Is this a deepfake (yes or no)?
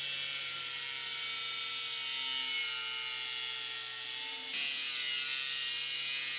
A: no